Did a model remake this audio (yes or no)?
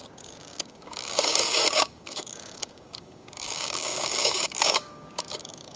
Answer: yes